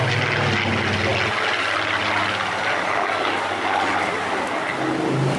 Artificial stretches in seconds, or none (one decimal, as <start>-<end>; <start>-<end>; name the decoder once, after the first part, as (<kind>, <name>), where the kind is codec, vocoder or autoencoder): none